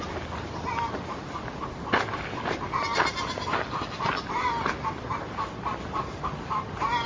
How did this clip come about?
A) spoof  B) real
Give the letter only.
B